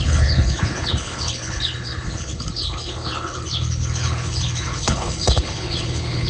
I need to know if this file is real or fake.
fake